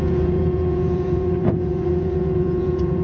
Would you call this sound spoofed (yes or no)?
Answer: yes